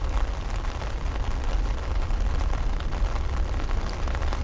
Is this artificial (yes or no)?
no